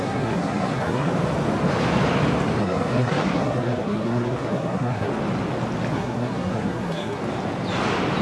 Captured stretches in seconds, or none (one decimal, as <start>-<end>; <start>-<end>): 1.1-2.6; 5.1-5.9; 7.2-8.2